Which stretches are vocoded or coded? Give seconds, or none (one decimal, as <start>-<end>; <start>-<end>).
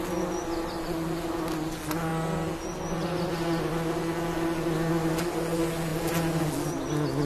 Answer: none